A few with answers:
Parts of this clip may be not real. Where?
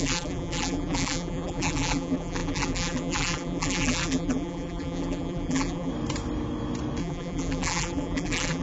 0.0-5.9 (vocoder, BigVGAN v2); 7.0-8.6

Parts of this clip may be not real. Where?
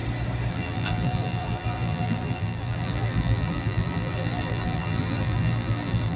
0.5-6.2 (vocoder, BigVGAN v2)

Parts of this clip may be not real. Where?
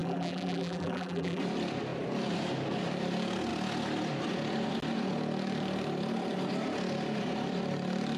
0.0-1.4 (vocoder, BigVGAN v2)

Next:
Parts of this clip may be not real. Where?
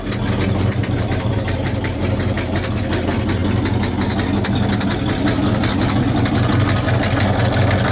0.8-2.0 (vocoder, BigVGAN v2)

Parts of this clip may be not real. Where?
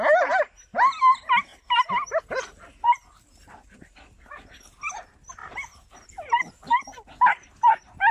none